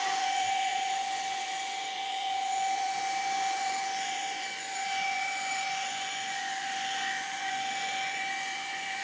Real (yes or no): no